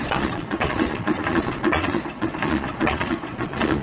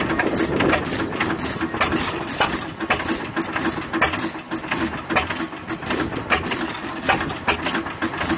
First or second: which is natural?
second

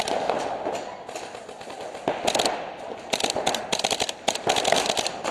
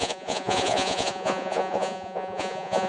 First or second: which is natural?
first